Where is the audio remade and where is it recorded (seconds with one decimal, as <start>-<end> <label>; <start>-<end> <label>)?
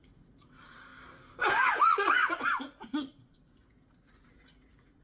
0.0-0.9 remade; 0.9-1.7 recorded; 1.7-5.0 remade